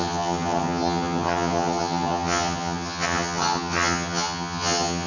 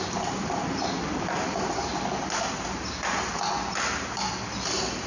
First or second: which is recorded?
second